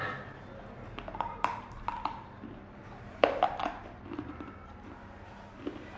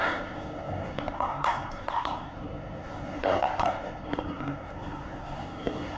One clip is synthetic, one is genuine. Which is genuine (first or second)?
first